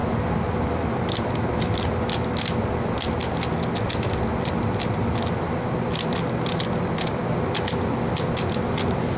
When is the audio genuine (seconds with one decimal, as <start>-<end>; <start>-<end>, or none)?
0.0-9.2